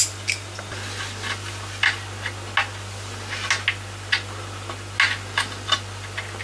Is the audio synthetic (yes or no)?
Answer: no